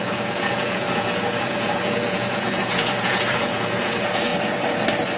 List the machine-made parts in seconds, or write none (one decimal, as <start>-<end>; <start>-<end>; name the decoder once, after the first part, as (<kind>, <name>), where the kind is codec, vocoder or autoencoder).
0.0-4.3 (vocoder, Vocos)